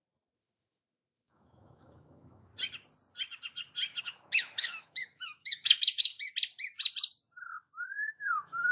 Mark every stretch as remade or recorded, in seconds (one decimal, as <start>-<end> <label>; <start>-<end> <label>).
0.0-2.5 remade; 2.5-4.0 recorded; 4.0-6.1 remade; 6.1-7.6 recorded; 7.6-8.7 remade